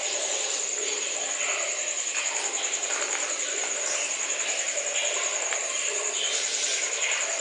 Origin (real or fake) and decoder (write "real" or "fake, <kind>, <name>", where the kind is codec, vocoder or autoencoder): real